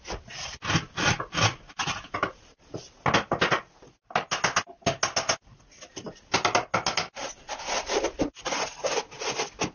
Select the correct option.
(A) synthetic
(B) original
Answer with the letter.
B